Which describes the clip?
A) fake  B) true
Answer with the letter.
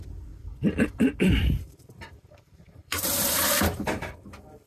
A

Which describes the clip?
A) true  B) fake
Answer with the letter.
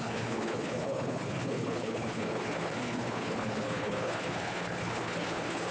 B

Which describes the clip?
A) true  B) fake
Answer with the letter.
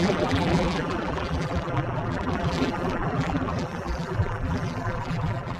B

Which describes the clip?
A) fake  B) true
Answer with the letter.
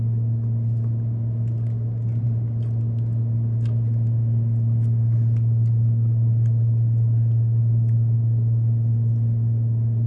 B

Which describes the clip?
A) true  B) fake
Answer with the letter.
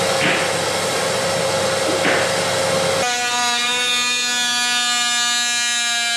A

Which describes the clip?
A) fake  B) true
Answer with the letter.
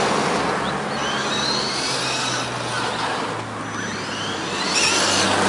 B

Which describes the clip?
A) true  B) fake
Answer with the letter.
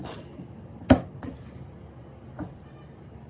A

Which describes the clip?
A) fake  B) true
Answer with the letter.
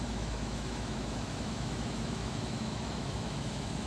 A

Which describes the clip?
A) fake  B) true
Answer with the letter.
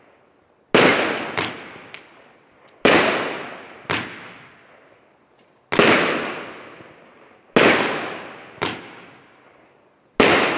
B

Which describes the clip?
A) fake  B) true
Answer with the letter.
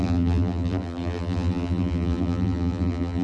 A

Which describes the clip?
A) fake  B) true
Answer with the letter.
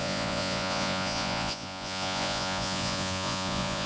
A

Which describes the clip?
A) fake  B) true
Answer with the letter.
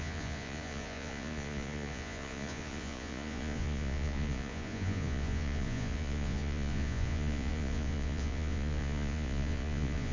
A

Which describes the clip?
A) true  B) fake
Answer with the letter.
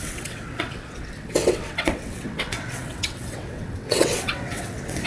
B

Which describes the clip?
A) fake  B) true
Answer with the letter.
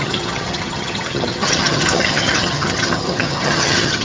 A